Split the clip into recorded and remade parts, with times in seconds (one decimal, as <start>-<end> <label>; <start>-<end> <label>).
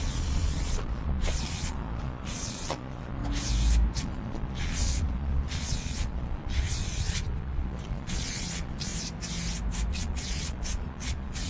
0.0-3.2 remade; 3.2-4.0 recorded; 4.0-8.9 remade; 8.9-9.9 recorded; 9.9-11.5 remade